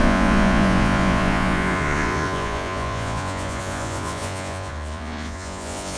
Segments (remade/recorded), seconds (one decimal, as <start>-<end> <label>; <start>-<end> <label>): 0.0-6.0 remade